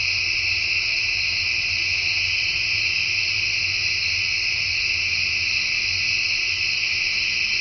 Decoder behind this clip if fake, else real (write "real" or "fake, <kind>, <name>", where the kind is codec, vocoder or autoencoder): real